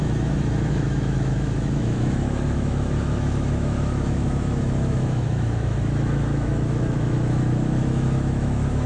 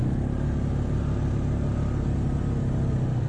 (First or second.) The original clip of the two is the second